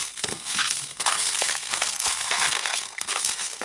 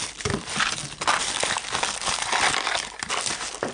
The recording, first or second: second